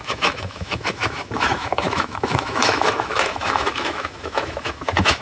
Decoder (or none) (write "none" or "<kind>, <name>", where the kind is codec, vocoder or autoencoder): autoencoder, DAC-VAE